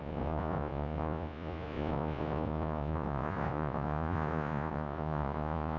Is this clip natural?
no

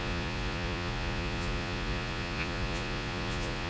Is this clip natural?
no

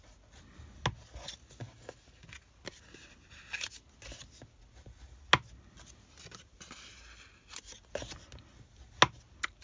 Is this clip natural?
yes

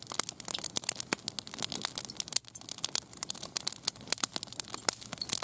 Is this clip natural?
yes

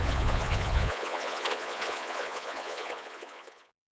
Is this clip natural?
no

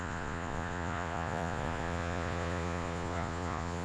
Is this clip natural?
no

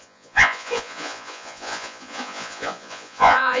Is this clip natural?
no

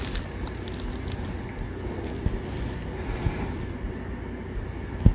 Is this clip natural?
yes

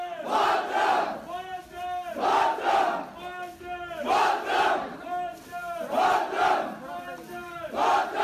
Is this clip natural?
yes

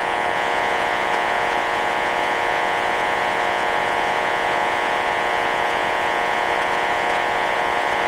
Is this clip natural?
no